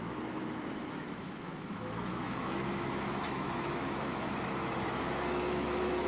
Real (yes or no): no